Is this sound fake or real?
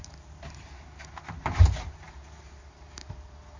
fake